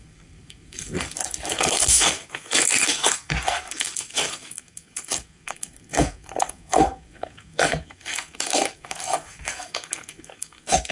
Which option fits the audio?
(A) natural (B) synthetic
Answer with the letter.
B